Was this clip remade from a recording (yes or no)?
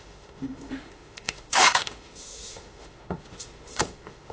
yes